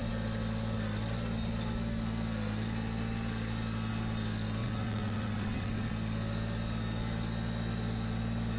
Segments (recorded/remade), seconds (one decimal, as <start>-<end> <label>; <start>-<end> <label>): 0.0-4.6 recorded; 4.6-5.9 remade; 5.9-8.6 recorded